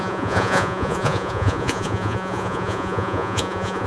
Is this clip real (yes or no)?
no